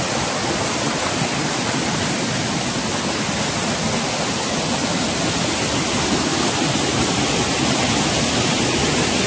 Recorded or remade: recorded